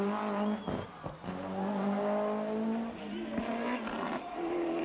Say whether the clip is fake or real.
real